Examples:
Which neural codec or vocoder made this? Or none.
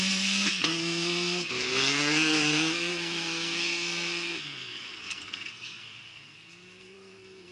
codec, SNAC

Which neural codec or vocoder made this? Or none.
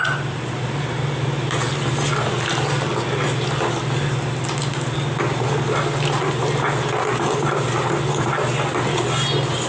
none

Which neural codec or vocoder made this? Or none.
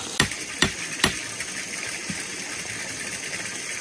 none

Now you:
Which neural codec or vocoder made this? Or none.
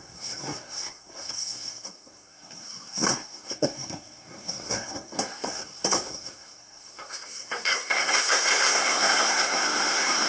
codec, SNAC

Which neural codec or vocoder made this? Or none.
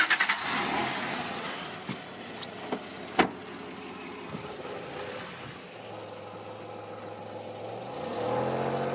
none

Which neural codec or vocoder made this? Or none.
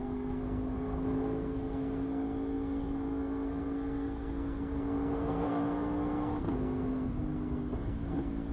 codec, SNAC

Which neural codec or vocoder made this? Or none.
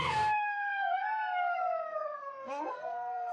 codec, SNAC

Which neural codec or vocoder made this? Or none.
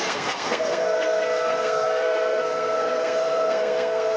codec, SNAC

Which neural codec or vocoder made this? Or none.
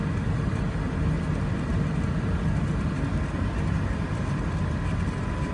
none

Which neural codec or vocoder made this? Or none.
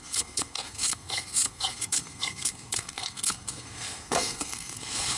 codec, SNAC